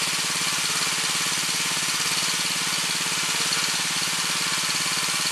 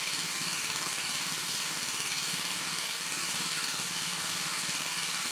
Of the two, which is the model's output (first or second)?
second